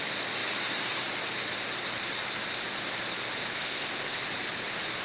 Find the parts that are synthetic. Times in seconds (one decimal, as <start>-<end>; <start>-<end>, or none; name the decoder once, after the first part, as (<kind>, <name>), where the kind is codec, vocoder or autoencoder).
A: 3.6-4.2 (codec, ZipCodec)